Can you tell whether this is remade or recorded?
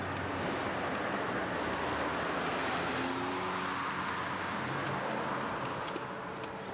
recorded